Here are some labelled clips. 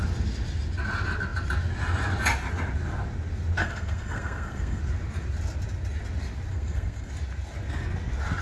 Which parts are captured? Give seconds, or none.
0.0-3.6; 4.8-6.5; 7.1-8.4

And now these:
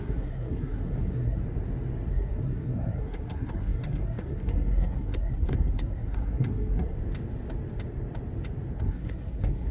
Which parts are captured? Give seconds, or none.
1.4-2.1; 7.0-8.8

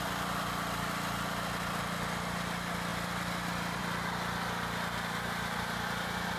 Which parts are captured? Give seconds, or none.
0.0-6.4

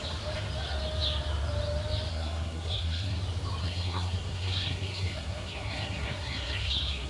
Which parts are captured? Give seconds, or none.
0.0-2.1; 3.2-3.6

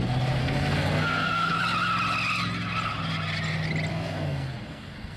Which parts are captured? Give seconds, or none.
0.0-0.4; 1.6-3.9